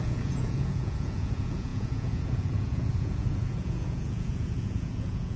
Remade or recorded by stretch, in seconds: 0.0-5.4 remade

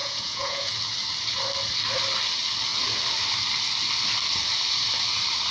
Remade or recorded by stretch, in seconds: 0.0-0.7 remade; 0.7-5.5 recorded

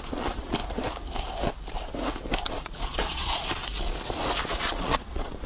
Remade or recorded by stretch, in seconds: 0.0-0.6 remade; 0.6-2.5 recorded; 2.5-3.6 remade; 3.6-4.4 recorded; 4.4-5.5 remade

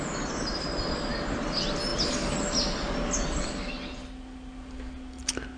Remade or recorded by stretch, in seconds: 0.0-5.6 recorded